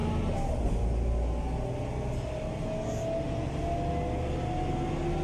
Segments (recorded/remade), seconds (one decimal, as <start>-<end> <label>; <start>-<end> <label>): 0.0-5.2 recorded